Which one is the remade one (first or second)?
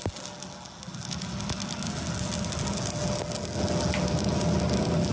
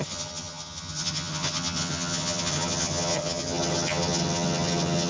second